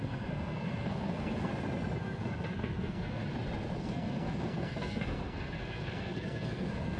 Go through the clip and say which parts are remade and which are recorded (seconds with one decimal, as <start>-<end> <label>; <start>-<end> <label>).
0.0-1.5 remade; 1.5-2.0 recorded; 2.0-3.2 remade; 3.2-3.8 recorded; 3.8-7.0 remade

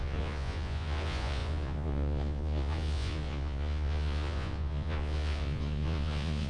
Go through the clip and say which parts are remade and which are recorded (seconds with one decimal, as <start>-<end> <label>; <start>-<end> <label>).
0.0-6.5 remade